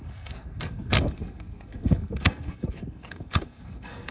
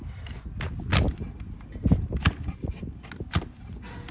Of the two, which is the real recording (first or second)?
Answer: second